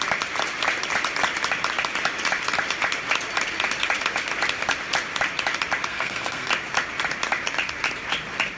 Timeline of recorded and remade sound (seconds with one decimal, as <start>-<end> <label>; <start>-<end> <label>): 0.0-5.9 recorded; 5.9-6.5 remade; 6.5-8.6 recorded